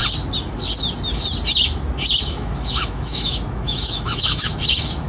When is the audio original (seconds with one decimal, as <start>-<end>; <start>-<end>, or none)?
0.0-2.2